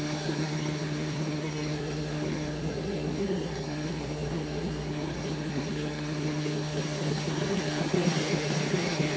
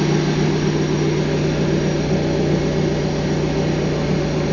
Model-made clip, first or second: first